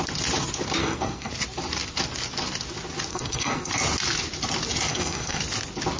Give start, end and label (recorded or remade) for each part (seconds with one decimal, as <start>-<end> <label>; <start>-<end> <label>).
0.0-0.8 recorded; 0.8-1.3 remade; 1.3-3.1 recorded; 3.1-3.7 remade; 3.7-4.9 recorded; 4.9-5.4 remade; 5.4-6.0 recorded